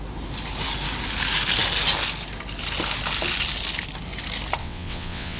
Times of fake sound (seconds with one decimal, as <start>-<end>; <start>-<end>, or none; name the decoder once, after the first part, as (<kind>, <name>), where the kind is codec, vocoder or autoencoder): 4.6-5.4 (vocoder, WaveNeXt)